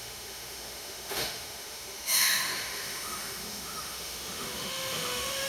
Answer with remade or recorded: remade